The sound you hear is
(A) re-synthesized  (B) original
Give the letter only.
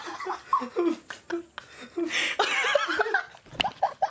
B